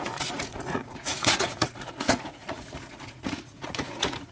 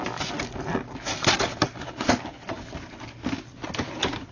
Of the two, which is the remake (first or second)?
first